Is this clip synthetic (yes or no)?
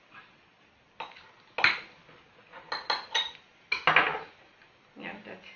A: no